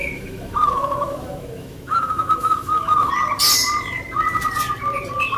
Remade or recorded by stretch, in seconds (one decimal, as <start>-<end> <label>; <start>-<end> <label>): 0.0-3.1 remade; 3.1-5.4 recorded